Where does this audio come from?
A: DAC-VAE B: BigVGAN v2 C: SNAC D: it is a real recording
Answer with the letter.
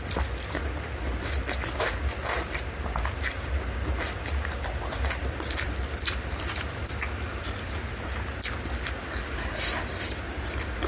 D